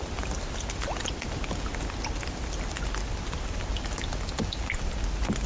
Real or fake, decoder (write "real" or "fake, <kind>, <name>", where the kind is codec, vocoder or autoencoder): real